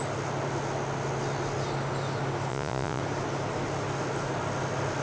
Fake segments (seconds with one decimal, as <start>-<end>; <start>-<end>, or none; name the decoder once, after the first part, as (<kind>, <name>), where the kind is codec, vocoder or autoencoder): 2.5-3.0 (vocoder, Vocos)